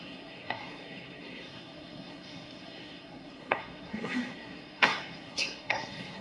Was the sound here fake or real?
fake